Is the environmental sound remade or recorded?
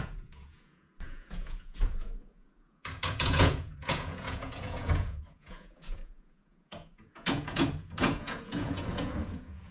remade